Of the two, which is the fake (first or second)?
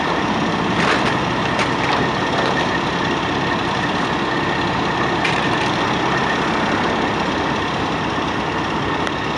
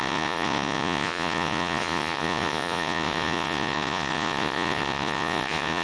second